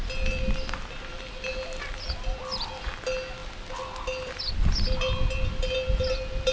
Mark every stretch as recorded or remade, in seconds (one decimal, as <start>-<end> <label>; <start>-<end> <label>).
0.0-6.5 recorded